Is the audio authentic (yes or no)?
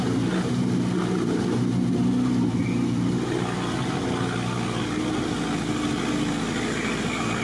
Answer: yes